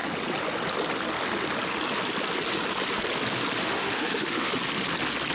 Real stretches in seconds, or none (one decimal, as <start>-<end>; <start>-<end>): 0.0-3.6; 4.5-5.3